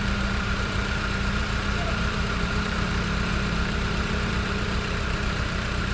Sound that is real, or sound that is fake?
fake